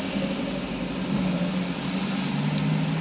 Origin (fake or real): real